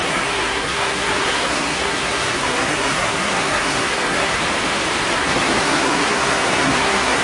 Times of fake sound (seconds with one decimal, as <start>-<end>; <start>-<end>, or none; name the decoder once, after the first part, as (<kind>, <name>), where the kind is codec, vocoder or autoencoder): 0.0-4.4 (codec, SNAC); 5.1-7.2